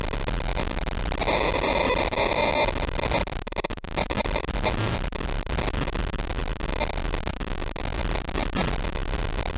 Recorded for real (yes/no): yes